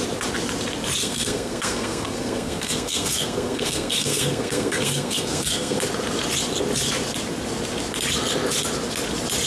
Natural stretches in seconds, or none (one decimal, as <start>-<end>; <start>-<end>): 0.0-1.0; 5.8-9.5